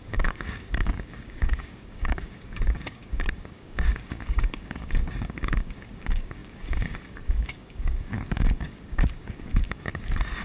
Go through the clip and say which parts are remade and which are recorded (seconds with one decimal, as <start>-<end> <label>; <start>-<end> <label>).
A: 0.0-10.4 remade